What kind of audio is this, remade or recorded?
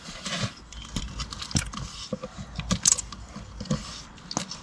recorded